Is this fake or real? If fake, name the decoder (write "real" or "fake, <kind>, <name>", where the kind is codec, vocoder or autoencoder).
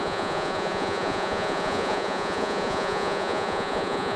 fake, vocoder, Vocos